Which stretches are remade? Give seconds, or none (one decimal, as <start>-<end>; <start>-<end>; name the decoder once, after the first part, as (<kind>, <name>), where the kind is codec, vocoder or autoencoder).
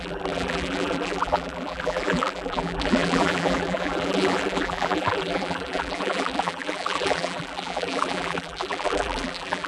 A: 0.0-9.7 (vocoder, BigVGAN v2)